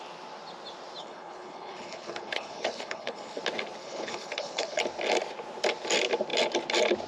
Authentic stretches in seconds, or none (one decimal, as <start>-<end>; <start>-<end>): 0.0-1.0; 3.4-3.8; 4.8-7.1